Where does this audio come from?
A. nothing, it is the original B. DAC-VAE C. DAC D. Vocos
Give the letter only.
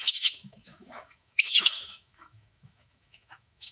B